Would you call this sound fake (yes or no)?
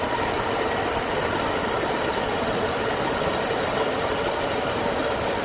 no